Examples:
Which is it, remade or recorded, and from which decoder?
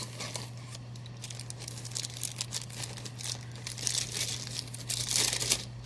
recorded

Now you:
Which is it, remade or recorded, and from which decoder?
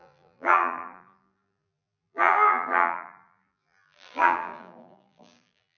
remade, vocoder, BigVGAN v2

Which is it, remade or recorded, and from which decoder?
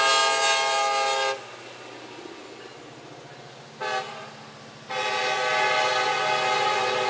recorded